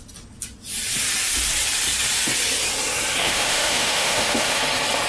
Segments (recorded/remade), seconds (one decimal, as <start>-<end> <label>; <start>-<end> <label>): 0.0-3.2 recorded; 3.2-4.6 remade; 4.6-5.1 recorded